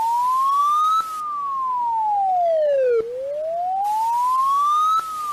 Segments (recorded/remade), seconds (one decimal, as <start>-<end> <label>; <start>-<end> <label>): 0.0-5.3 recorded